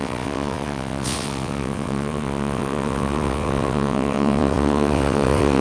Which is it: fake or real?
fake